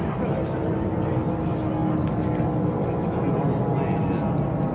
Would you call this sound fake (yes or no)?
no